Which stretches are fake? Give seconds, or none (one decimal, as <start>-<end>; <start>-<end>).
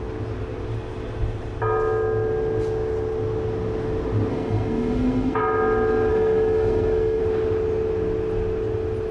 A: 4.3-5.4; 6.1-7.2